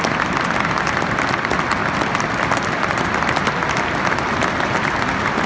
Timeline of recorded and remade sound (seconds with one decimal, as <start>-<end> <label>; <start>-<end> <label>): 0.0-5.5 recorded

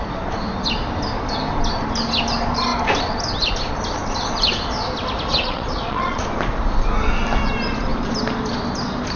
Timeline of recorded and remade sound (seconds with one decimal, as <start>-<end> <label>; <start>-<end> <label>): 0.0-5.3 recorded; 5.3-6.2 remade; 6.2-9.2 recorded

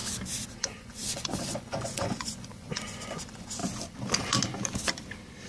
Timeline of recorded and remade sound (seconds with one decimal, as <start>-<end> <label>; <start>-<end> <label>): 0.0-0.5 recorded; 0.5-3.6 remade; 3.6-5.5 recorded